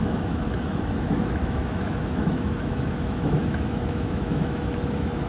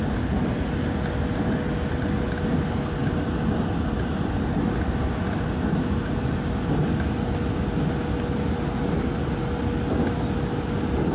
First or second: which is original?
second